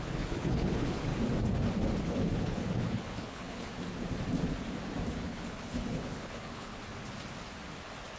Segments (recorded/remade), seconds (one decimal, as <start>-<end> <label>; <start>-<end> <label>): 0.0-1.1 remade; 1.1-2.0 recorded; 2.0-3.7 remade; 3.7-5.1 recorded; 5.1-6.8 remade; 6.8-8.2 recorded